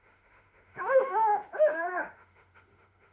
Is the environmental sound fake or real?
fake